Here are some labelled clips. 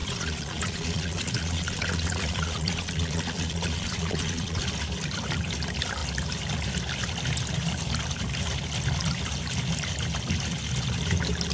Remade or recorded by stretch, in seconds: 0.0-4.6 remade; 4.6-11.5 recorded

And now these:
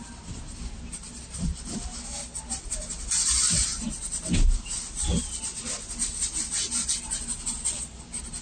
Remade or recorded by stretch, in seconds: 0.0-8.4 recorded